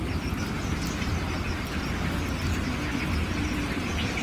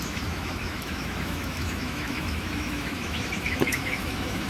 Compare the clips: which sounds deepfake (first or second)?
second